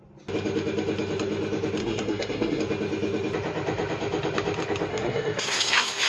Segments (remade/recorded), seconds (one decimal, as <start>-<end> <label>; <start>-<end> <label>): 0.0-1.8 recorded; 1.8-2.6 remade; 2.6-4.9 recorded; 4.9-6.1 remade